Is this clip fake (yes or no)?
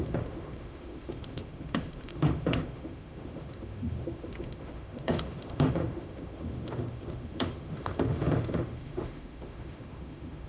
yes